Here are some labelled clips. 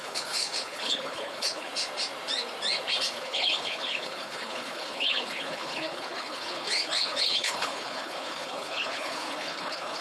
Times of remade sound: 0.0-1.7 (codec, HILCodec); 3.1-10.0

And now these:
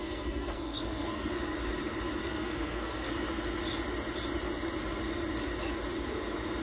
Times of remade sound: 0.0-1.3 (codec, SNAC); 2.2-3.1

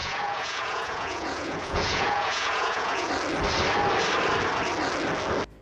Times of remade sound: 0.0-3.1 (vocoder, Vocos)

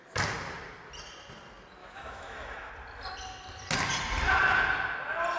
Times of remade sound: 1.8-2.7 (autoencoder, DAC-VAE)

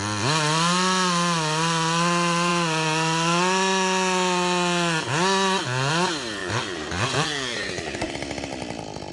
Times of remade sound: 6.4-8.1 (vocoder, Vocos)

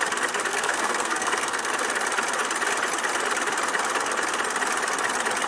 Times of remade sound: 0.5-1.7 (codec, SNAC)

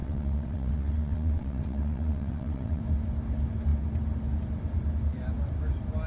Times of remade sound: 0.0-2.8 (vocoder, WaveNeXt)

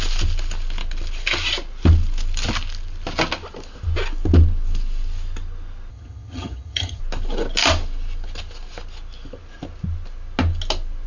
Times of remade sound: 5.9-7.0 (vocoder, HiFi-GAN)